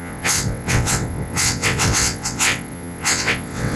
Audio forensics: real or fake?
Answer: fake